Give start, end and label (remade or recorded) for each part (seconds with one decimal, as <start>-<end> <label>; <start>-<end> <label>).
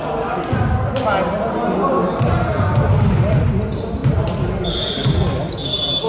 0.0-6.1 recorded